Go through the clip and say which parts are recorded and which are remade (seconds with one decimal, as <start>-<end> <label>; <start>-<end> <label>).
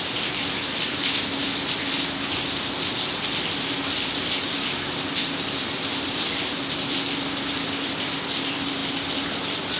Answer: 0.0-9.8 recorded